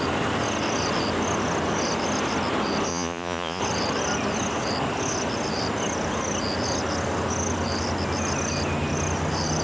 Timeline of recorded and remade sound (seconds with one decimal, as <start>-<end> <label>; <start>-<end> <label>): 0.0-2.9 recorded; 2.9-3.6 remade; 3.6-9.6 recorded